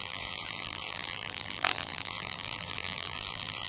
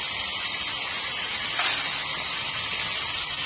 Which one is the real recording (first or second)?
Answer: second